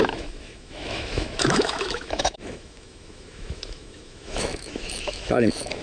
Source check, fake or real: fake